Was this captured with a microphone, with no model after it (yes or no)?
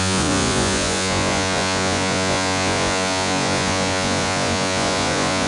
no